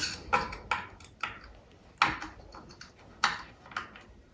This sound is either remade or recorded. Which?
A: recorded